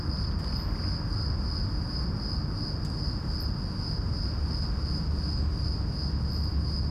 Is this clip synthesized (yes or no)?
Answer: no